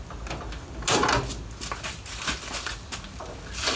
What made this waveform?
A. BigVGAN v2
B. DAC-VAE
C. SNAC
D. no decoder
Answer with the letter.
D